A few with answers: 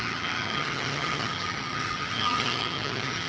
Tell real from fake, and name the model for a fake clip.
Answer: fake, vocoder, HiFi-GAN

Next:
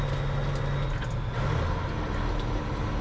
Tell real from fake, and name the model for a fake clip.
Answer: real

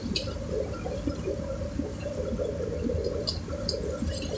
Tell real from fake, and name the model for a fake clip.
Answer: real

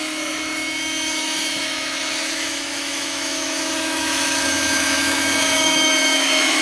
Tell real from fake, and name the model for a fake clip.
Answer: fake, autoencoder, DAC-VAE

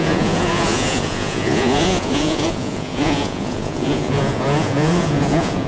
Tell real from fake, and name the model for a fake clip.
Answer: fake, vocoder, Vocos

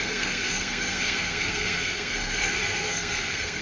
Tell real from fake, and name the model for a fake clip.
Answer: fake, codec, SNAC